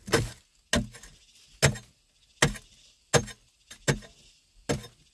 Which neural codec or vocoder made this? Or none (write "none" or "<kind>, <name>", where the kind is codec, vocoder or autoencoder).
none